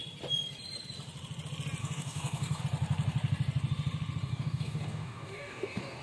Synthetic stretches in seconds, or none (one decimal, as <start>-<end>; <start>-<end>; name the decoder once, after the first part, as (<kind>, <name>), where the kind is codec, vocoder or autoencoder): 1.8-2.6 (codec, DAC); 4.3-6.0